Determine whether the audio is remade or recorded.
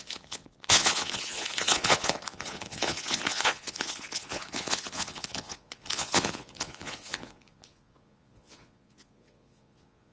remade